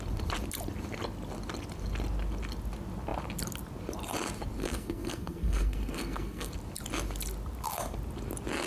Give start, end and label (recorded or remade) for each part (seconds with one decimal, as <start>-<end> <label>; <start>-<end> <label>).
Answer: 0.0-4.6 recorded; 4.6-6.5 remade; 6.5-8.7 recorded